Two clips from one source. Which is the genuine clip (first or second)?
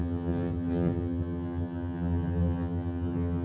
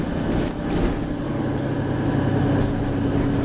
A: second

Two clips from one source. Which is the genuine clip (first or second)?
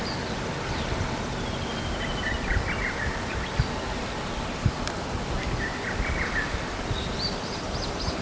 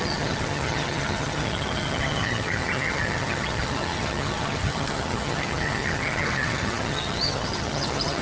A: first